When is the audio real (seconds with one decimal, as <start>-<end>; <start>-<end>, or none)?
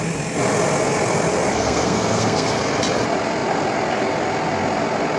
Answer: 0.0-1.5; 2.6-5.2